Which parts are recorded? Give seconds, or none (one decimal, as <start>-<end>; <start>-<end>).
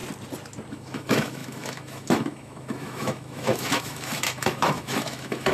0.0-0.7